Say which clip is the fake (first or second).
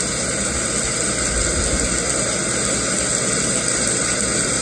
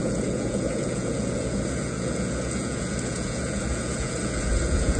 second